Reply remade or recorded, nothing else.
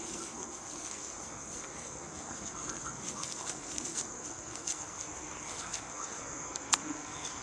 remade